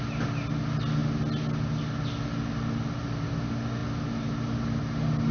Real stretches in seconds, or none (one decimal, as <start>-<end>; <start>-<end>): 0.0-5.3